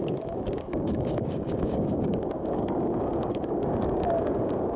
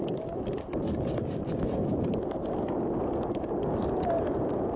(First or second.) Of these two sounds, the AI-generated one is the first